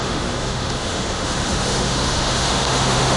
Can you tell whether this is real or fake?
fake